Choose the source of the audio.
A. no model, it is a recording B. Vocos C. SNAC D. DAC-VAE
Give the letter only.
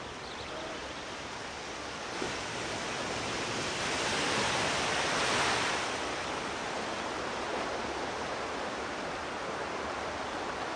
A